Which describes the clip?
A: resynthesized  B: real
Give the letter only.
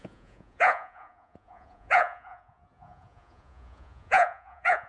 A